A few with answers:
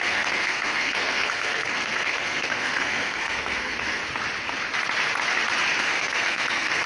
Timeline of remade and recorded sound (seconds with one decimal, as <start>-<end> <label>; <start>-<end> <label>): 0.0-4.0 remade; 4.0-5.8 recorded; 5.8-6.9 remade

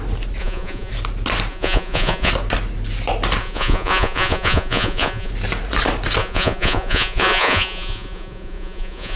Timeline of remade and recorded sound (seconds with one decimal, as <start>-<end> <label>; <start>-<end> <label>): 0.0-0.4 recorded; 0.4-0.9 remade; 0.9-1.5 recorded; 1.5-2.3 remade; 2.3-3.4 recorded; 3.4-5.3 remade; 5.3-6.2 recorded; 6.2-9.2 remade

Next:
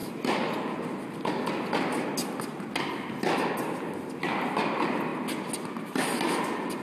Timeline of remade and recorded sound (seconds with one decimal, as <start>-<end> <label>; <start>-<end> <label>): 0.0-6.8 recorded